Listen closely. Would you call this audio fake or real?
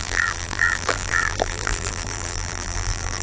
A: fake